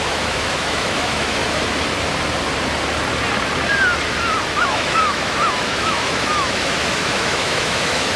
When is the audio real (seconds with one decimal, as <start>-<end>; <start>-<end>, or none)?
1.4-4.6